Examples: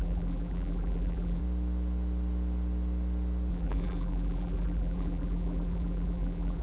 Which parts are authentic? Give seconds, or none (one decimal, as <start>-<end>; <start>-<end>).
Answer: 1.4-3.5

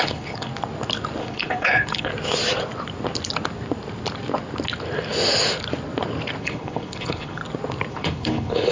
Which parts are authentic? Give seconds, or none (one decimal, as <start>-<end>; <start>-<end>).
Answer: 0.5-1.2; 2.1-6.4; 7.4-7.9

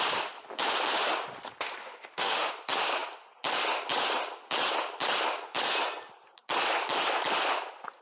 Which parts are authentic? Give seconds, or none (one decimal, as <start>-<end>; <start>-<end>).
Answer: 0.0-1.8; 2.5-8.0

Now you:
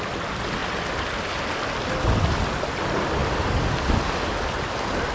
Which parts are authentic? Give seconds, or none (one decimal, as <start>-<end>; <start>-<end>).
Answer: 0.0-5.1